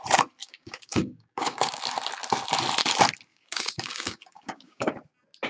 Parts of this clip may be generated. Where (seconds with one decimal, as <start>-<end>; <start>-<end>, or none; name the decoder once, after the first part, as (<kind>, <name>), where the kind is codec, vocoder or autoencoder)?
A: 0.4-1.8 (codec, DAC); 3.3-4.9